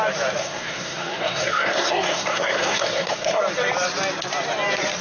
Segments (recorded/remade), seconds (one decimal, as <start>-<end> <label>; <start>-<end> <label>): 0.0-0.4 recorded; 0.4-3.4 remade; 3.4-5.0 recorded